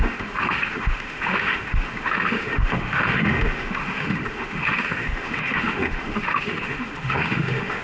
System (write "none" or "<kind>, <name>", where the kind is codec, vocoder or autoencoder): autoencoder, DAC-VAE